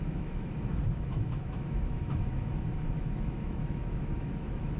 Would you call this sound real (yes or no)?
no